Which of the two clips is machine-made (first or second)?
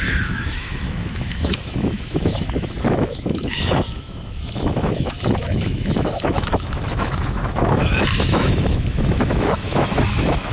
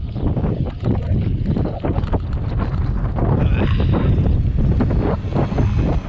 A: first